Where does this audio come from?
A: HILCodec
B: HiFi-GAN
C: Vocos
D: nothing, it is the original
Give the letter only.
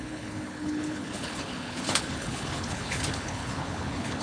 A